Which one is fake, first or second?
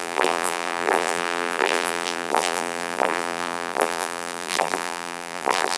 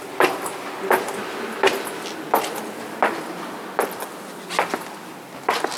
first